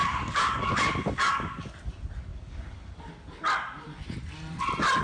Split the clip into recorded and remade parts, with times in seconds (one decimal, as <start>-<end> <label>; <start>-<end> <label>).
0.0-1.7 remade; 1.7-2.3 recorded; 2.3-3.1 remade; 3.1-5.0 recorded